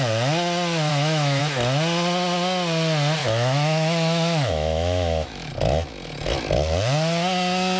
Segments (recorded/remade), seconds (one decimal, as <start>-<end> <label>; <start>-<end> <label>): 0.0-0.9 recorded; 0.9-1.4 remade; 1.4-3.2 recorded; 3.2-5.5 remade; 5.5-7.8 recorded